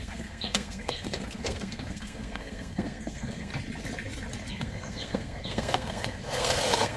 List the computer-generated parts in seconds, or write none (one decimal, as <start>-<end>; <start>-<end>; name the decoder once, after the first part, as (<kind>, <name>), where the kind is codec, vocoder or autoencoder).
0.0-3.5 (codec, SNAC); 4.5-7.0